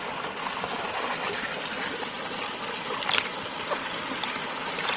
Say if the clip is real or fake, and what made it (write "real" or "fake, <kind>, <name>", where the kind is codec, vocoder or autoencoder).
real